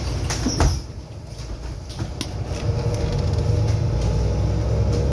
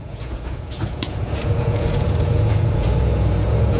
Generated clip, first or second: second